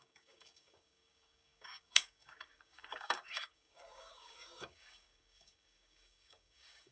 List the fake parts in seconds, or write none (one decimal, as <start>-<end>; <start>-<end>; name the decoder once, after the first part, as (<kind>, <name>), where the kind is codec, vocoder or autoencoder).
0.0-6.9 (codec, DAC)